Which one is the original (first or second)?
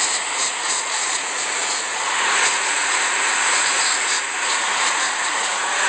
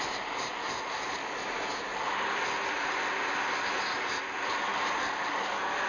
second